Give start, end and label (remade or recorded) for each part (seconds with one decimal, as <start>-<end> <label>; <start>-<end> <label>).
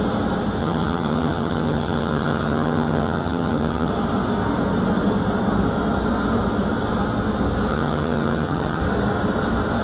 0.0-0.6 recorded; 0.6-3.9 remade; 3.9-7.7 recorded; 7.7-8.8 remade; 8.8-9.8 recorded